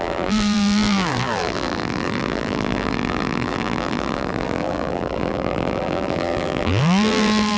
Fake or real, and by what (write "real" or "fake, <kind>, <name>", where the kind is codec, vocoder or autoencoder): fake, vocoder, BigVGAN v2